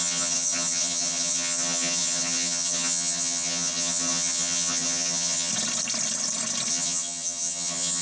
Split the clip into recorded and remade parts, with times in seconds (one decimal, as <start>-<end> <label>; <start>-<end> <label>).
0.0-5.5 remade; 5.5-6.7 recorded; 6.7-8.0 remade